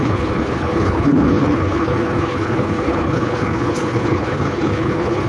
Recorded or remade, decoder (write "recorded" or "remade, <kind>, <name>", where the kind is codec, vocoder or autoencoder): remade, codec, HILCodec